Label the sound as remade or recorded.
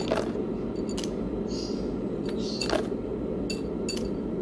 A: recorded